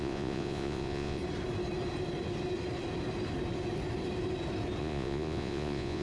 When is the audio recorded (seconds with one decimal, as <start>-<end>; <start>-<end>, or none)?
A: 1.2-4.8